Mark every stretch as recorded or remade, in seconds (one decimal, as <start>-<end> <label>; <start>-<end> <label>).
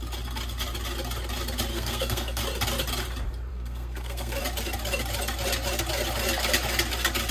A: 0.0-1.7 recorded; 1.7-2.4 remade; 2.4-3.5 recorded; 3.5-4.4 remade; 4.4-7.3 recorded